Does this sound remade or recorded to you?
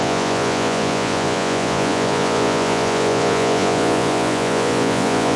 remade